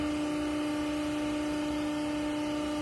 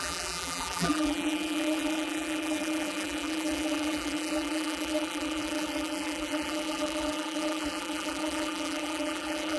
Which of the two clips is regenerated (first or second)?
second